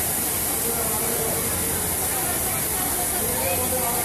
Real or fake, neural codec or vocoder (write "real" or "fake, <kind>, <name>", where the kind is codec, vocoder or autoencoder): real